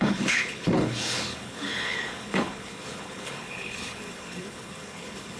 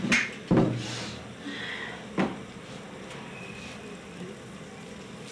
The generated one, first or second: first